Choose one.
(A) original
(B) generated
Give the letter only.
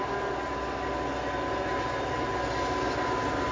A